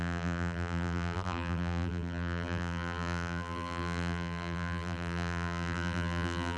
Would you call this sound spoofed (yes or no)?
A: yes